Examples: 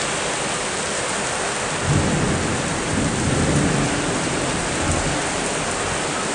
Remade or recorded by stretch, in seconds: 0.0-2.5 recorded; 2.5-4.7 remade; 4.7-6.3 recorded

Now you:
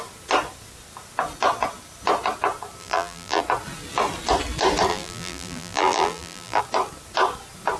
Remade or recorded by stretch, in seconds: 0.0-2.8 recorded; 2.8-3.4 remade; 3.4-4.9 recorded; 4.9-6.6 remade; 6.6-7.8 recorded